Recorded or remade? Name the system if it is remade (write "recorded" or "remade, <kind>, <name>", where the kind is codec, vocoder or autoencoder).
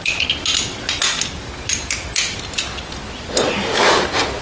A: recorded